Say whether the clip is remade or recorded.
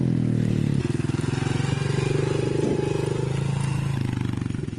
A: recorded